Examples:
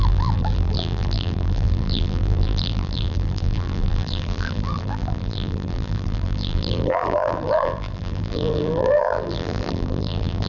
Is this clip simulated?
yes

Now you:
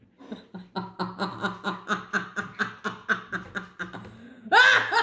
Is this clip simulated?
no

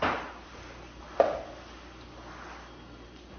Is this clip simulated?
yes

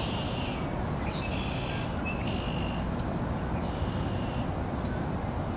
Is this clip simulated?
no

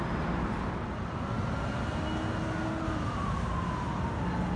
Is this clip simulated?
no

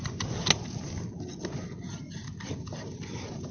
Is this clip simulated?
no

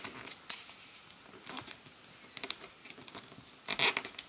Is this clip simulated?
no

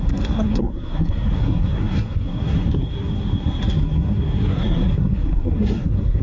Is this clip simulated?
yes